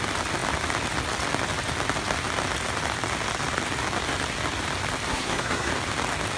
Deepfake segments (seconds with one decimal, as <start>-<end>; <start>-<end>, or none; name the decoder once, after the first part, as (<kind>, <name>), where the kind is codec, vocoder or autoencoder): 5.1-5.7 (codec, SNAC)